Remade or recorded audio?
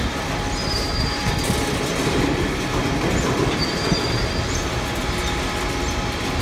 recorded